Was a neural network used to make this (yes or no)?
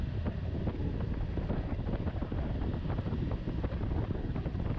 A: no